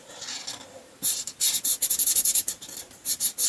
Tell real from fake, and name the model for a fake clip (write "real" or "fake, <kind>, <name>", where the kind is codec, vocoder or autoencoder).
real